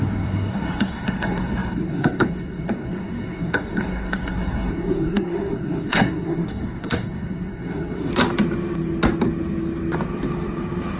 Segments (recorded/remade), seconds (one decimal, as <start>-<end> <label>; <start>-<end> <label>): 0.0-8.1 remade; 8.1-11.0 recorded